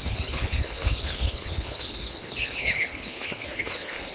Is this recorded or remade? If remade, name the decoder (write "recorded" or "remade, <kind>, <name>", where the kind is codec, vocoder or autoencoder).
remade, codec, HILCodec